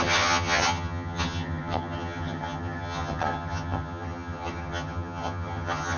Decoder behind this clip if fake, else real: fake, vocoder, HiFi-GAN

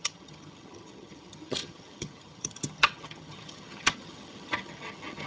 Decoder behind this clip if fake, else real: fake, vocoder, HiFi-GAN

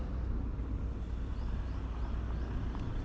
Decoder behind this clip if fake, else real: real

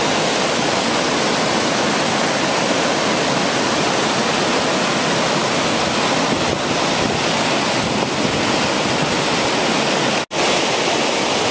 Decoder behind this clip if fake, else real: real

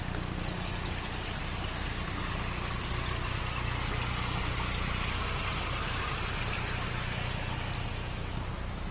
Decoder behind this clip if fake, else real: real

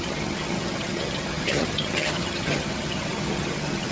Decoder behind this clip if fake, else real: fake, vocoder, HiFi-GAN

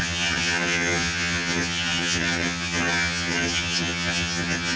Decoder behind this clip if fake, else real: fake, vocoder, HiFi-GAN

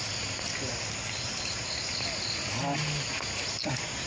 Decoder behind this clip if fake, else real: real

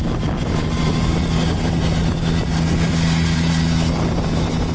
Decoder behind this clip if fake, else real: real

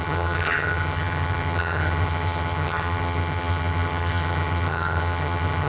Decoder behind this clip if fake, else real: fake, vocoder, HiFi-GAN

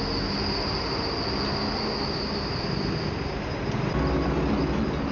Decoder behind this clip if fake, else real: real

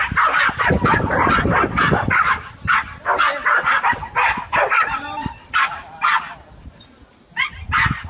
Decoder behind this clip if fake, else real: real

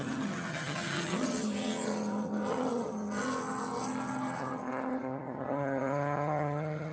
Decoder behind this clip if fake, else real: fake, vocoder, HiFi-GAN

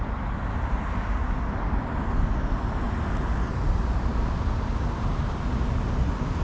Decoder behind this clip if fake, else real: real